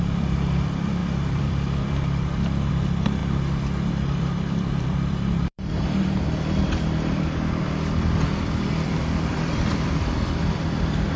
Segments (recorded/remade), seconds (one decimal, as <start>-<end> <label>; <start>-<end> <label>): 0.0-3.2 remade; 3.2-3.9 recorded; 3.9-11.2 remade